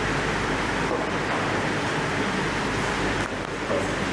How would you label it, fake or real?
fake